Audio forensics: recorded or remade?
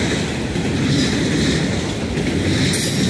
recorded